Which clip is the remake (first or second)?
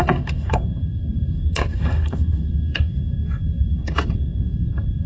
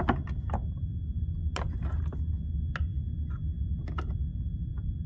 first